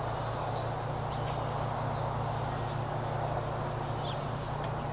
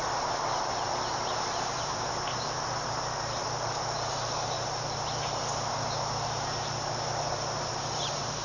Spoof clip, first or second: second